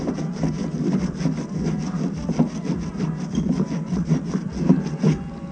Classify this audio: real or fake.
real